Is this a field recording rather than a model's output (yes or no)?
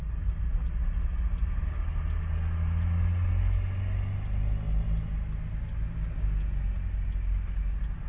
yes